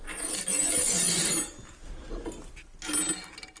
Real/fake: real